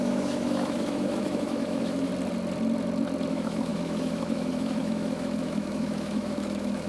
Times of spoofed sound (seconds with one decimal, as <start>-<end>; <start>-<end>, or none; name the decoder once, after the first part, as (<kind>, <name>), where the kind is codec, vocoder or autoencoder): 0.0-2.1 (autoencoder, DAC-VAE); 3.3-6.9